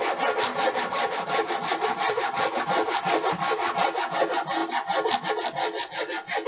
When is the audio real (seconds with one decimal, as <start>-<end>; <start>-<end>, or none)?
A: 0.0-0.5; 2.6-6.5